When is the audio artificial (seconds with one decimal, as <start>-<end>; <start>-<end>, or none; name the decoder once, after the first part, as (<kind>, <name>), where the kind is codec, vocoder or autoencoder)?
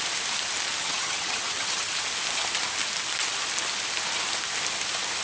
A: 0.8-1.9 (vocoder, HiFi-GAN)